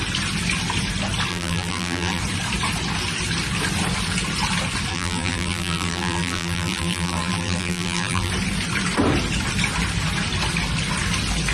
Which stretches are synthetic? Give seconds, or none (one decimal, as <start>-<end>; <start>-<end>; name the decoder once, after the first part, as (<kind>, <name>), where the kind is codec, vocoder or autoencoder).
1.3-2.2 (vocoder, BigVGAN v2); 4.9-8.3